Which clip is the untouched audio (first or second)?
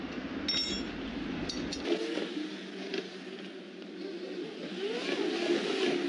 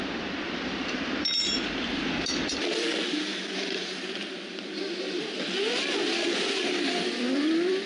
first